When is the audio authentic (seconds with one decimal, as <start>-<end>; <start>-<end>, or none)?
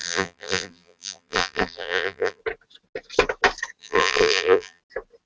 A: 2.4-3.8; 4.8-5.3